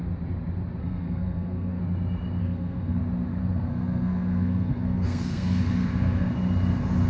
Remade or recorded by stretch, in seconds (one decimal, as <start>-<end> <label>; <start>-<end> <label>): 0.0-0.8 recorded; 0.8-1.8 remade; 1.8-2.4 recorded; 2.4-3.0 remade; 3.0-3.4 recorded; 3.4-6.3 remade; 6.3-7.1 recorded